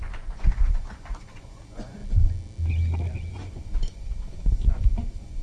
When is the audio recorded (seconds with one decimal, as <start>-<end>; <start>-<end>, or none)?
2.0-3.3